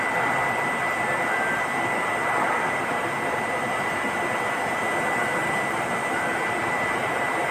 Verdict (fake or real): real